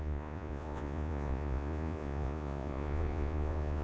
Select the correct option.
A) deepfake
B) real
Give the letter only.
A